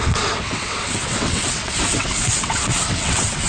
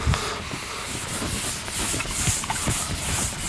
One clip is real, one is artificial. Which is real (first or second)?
second